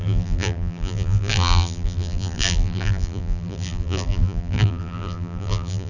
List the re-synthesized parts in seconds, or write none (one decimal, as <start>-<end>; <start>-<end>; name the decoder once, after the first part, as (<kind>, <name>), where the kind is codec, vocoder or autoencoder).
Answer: 0.0-5.9 (vocoder, BigVGAN v2)